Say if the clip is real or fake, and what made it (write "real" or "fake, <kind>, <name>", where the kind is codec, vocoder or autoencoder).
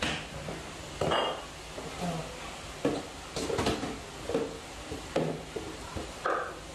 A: real